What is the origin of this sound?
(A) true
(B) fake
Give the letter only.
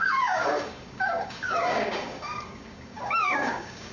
B